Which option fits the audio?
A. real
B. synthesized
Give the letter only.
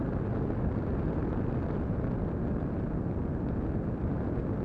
A